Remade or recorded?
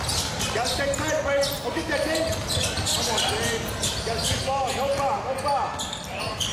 recorded